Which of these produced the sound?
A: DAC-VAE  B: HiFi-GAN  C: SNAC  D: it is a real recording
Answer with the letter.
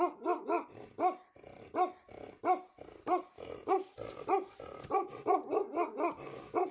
D